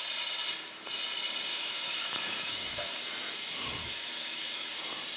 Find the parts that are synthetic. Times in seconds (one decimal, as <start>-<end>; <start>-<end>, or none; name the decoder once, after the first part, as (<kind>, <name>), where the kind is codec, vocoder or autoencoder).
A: 1.5-3.0 (autoencoder, DAC-VAE); 3.8-4.7